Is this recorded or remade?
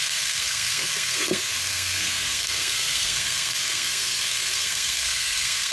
remade